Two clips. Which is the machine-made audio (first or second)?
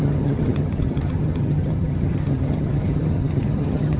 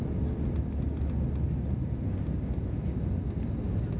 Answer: first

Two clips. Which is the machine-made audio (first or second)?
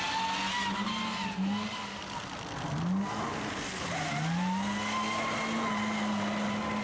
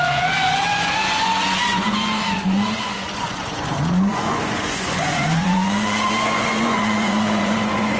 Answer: second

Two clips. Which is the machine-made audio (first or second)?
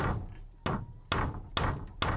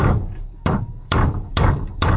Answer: second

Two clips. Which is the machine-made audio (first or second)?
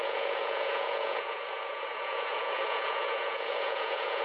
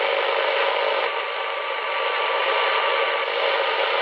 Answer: first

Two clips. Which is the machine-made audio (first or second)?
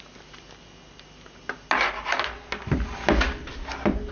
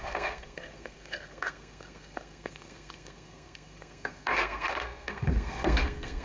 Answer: second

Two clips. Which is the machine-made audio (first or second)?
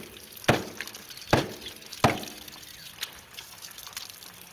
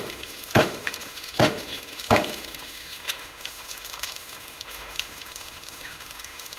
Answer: second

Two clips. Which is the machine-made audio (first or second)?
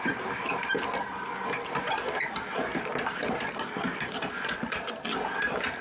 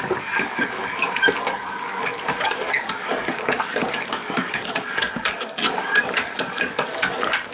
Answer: second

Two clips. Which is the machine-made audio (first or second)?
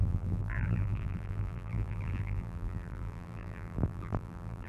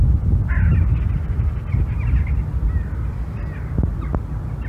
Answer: first